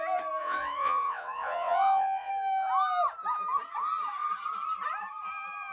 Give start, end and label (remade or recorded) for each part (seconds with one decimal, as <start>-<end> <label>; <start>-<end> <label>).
0.0-0.4 recorded; 0.4-2.3 remade; 2.3-5.7 recorded